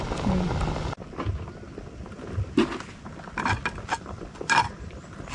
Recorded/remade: recorded